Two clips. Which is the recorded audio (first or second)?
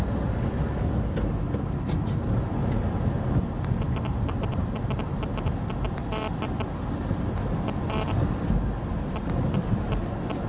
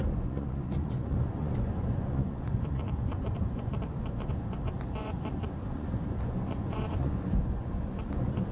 first